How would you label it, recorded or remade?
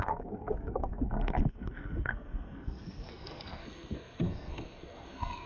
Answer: remade